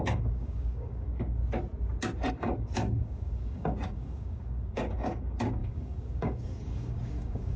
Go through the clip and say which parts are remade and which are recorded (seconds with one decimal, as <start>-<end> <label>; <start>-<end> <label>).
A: 0.0-1.4 remade; 1.4-2.3 recorded; 2.3-7.6 remade